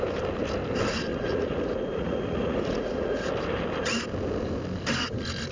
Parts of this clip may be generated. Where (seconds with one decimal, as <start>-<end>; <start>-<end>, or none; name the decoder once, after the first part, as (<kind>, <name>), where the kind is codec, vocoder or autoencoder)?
1.1-3.3 (vocoder, Vocos)